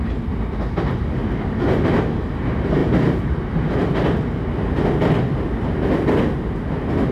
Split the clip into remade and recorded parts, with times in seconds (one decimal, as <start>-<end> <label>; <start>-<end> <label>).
0.0-1.2 recorded; 1.2-2.0 remade; 2.0-2.8 recorded; 2.8-3.7 remade; 3.7-7.1 recorded